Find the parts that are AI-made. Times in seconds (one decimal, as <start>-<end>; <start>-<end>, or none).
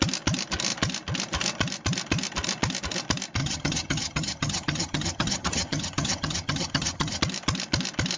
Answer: 3.4-7.2